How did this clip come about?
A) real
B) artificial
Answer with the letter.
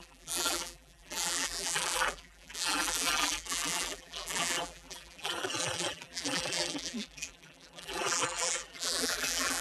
B